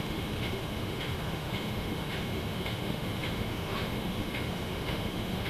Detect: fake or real fake